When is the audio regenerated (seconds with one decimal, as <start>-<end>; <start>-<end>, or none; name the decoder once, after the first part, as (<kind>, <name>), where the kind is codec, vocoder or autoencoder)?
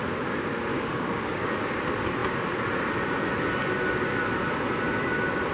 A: 0.7-1.5 (codec, DAC)